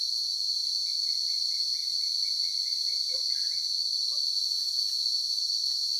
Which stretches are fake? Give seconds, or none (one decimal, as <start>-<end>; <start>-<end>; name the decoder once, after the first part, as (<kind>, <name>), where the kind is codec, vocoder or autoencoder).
none